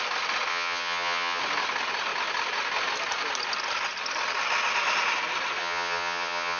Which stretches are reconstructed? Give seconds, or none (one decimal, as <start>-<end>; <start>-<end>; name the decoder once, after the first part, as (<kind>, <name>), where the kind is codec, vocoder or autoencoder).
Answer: 0.5-1.4 (vocoder, HiFi-GAN); 5.6-6.6